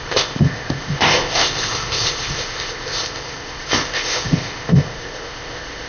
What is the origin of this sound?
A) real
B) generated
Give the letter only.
B